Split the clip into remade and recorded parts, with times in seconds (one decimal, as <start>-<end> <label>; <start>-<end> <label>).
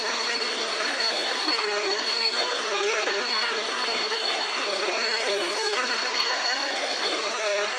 0.0-7.8 remade